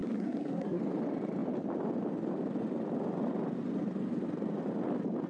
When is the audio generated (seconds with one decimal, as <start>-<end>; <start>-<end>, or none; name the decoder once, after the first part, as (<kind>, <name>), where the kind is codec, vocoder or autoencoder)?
0.0-0.8 (codec, SNAC)